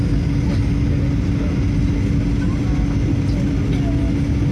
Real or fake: real